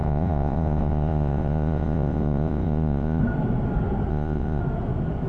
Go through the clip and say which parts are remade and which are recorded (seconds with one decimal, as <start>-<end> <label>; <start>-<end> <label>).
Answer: 0.0-3.2 remade; 3.2-4.1 recorded; 4.1-4.6 remade; 4.6-5.3 recorded